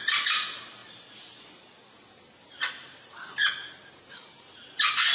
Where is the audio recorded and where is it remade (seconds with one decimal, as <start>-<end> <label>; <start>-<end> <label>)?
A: 0.0-5.1 recorded